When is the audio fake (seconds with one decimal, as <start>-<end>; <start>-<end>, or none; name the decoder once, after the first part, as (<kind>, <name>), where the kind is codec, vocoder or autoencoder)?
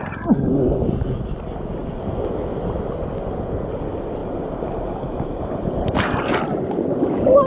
4.2-7.5 (vocoder, BigVGAN v2)